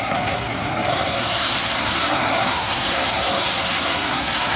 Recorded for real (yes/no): no